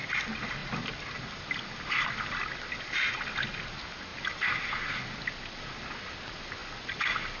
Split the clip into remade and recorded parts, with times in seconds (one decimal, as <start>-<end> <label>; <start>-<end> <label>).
0.0-7.4 recorded